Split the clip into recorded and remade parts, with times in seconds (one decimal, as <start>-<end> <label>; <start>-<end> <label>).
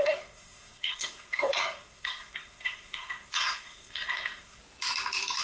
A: 0.0-4.6 remade; 4.6-5.4 recorded